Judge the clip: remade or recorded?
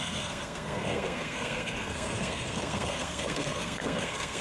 remade